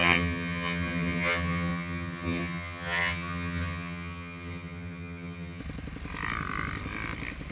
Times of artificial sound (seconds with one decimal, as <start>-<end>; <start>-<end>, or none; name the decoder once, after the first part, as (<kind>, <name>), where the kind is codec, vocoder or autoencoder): 0.0-5.6 (vocoder, HiFi-GAN)